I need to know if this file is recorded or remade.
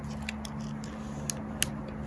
recorded